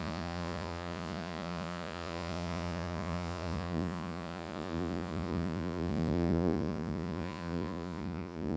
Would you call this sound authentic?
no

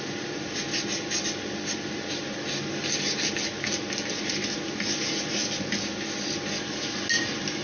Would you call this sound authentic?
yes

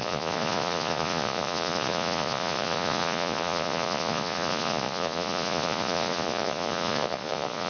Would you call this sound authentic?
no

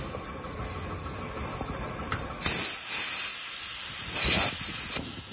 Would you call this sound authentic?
yes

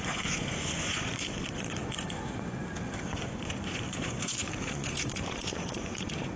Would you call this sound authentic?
no